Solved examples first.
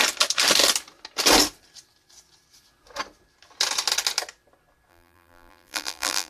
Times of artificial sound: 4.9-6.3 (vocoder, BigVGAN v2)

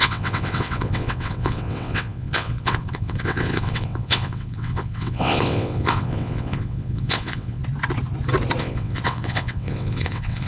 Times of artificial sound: 0.0-7.6 (vocoder, WaveNeXt); 8.6-10.5